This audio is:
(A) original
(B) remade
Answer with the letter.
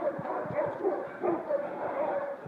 B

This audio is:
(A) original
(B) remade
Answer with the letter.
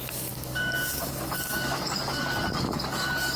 B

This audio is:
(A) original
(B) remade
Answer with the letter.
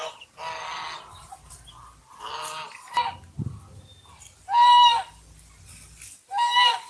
A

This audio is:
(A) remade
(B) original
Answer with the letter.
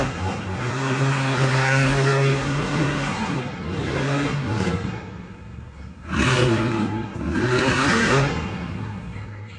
A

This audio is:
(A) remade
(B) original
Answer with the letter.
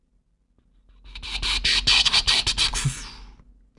B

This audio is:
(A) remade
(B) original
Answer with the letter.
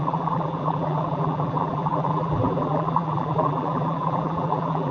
A